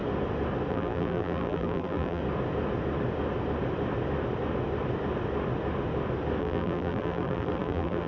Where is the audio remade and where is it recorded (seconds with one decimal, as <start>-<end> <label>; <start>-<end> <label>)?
0.0-0.7 recorded; 0.7-2.2 remade; 2.2-6.4 recorded; 6.4-8.1 remade